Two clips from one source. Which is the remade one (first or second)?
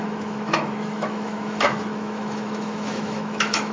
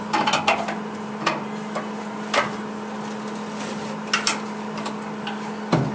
first